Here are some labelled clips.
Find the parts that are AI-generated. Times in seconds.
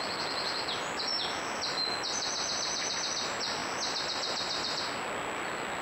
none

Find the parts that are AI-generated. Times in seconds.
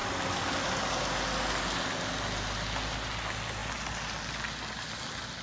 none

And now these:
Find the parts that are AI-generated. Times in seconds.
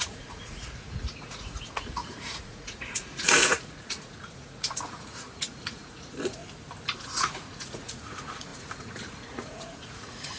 0.0-6.4 (vocoder, Vocos); 7.0-10.4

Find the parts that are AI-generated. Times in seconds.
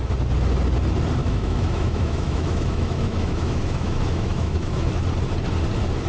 1.2-4.9 (autoencoder, DAC-VAE)